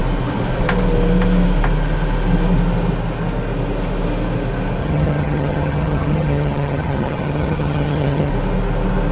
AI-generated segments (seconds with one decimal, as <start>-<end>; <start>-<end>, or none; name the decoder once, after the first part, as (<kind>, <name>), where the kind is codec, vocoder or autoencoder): 4.8-8.3 (vocoder, HiFi-GAN)